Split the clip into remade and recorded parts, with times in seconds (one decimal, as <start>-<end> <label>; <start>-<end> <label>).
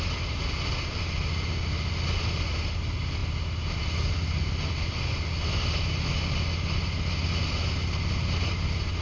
0.0-9.0 recorded